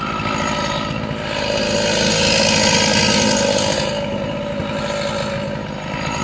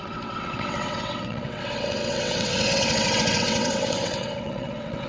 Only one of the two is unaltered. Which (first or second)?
first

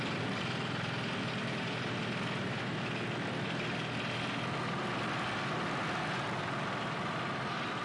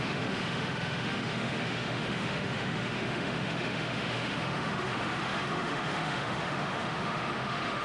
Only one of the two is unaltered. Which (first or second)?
first